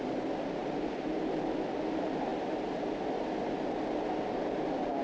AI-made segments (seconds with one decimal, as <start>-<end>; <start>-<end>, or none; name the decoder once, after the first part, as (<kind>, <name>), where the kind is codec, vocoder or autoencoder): none